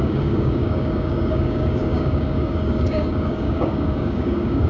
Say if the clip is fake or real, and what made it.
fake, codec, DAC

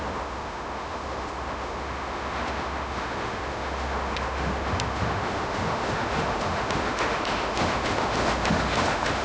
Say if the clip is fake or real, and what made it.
fake, autoencoder, DAC-VAE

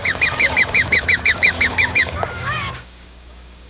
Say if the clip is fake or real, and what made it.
fake, codec, DAC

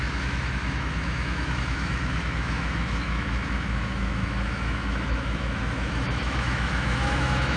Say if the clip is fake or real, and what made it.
fake, autoencoder, DAC-VAE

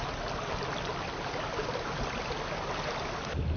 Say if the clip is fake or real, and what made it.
real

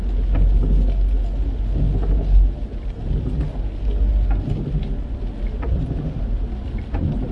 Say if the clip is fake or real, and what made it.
real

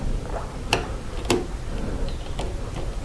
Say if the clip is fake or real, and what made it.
real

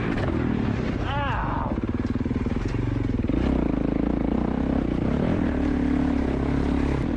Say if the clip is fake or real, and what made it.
real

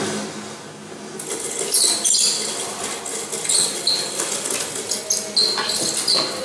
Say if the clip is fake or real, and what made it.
real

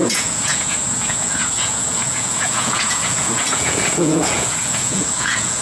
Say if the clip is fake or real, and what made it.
fake, vocoder, Vocos